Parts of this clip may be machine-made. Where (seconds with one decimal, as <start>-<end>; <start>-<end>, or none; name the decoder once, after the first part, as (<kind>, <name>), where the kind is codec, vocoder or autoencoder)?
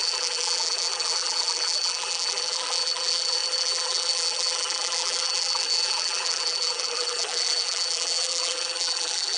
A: 0.0-9.4 (vocoder, BigVGAN v2)